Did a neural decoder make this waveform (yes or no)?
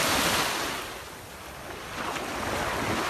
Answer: no